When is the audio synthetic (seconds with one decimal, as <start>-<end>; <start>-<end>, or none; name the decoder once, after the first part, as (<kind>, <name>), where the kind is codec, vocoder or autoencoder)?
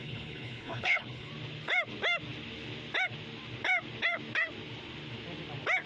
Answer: 0.0-1.3 (codec, HILCodec)